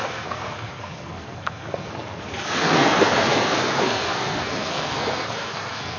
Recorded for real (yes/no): no